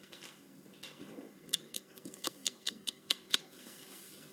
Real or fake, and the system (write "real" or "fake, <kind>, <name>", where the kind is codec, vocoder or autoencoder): fake, codec, SNAC